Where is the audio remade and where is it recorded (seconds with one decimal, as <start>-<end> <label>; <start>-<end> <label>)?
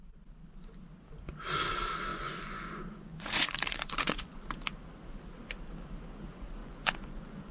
0.0-2.1 recorded; 2.1-4.5 remade; 4.5-6.6 recorded; 6.6-7.5 remade